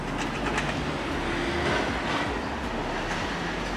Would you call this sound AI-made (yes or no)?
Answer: no